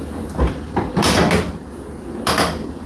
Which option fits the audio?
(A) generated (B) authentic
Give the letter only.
B